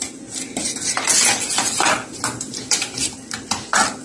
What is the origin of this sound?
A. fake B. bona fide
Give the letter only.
B